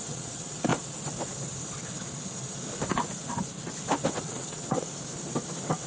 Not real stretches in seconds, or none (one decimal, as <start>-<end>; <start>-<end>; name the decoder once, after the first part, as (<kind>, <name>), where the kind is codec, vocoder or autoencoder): 0.0-0.7 (vocoder, WaveNeXt); 4.2-4.9